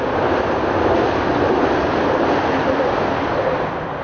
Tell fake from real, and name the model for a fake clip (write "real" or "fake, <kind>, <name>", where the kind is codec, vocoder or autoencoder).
fake, vocoder, BigVGAN v2